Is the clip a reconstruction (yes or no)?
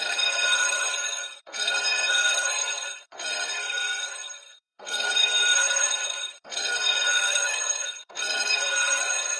yes